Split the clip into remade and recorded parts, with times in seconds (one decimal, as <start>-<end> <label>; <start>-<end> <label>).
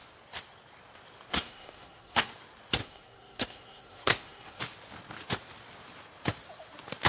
0.0-1.3 recorded; 1.3-2.3 remade; 2.3-2.8 recorded; 2.8-4.6 remade; 4.6-7.1 recorded